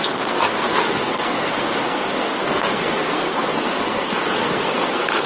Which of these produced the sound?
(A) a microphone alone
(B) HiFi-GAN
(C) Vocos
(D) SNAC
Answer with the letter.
D